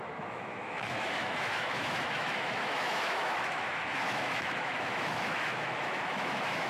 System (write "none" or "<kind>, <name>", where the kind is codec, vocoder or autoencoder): autoencoder, DAC-VAE